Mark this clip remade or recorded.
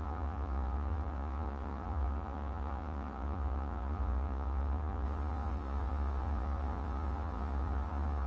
remade